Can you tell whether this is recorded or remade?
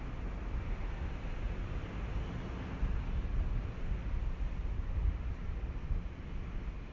recorded